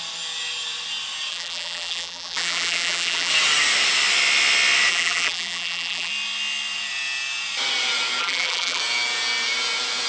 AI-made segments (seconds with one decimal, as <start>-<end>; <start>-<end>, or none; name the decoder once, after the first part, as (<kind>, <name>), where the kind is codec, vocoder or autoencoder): 1.3-3.3 (vocoder, BigVGAN v2); 4.9-6.1; 8.2-8.8